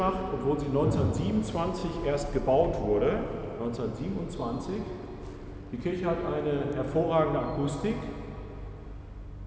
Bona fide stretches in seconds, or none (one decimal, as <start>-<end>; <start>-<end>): 0.0-9.5